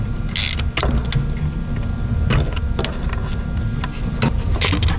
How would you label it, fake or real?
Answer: real